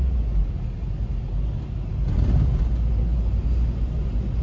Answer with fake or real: real